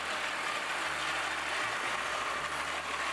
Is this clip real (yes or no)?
yes